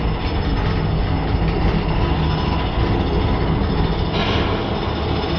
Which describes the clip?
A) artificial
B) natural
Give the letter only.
B